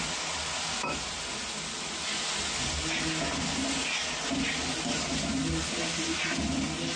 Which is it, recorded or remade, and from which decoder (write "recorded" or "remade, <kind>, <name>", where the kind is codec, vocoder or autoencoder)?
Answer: recorded